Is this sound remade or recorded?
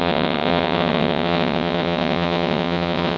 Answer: remade